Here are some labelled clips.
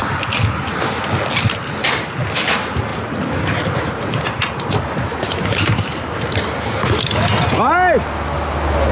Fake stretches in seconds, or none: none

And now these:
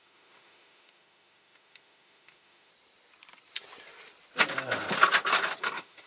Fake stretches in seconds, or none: 0.0-2.7 (autoencoder, DAC-VAE); 5.6-6.1

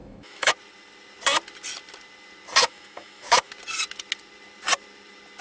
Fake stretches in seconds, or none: 0.0-0.5 (autoencoder, DAC-VAE); 2.6-3.5

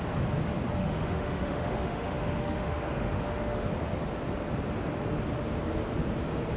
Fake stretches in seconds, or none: 0.8-3.7 (autoencoder, DAC-VAE)

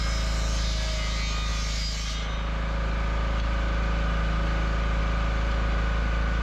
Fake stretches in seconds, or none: none

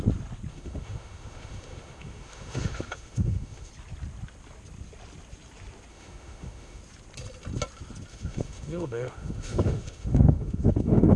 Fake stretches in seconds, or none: 0.5-3.7 (autoencoder, DAC-VAE); 5.9-6.8; 8.1-11.2